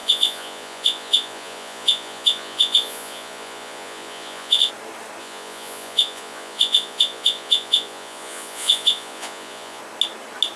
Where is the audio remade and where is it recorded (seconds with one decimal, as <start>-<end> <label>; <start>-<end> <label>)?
0.0-4.7 remade; 4.7-5.2 recorded; 5.2-9.8 remade; 9.8-10.6 recorded